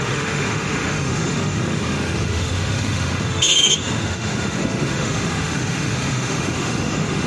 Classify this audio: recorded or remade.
remade